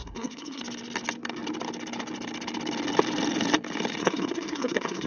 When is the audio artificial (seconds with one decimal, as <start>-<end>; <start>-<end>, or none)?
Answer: 0.0-0.6; 4.0-5.1